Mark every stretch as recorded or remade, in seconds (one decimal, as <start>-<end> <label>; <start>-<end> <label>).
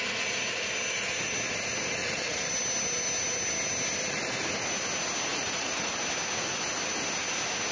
0.0-2.0 recorded; 2.0-2.5 remade; 2.5-5.3 recorded; 5.3-5.9 remade; 5.9-7.7 recorded